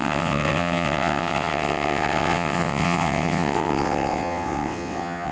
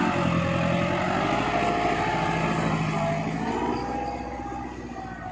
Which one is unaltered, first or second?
second